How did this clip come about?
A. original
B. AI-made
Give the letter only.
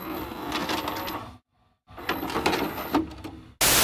A